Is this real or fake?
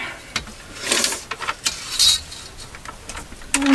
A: real